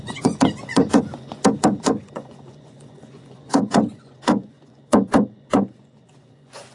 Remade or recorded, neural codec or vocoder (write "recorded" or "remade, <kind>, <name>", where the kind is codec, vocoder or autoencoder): remade, vocoder, Vocos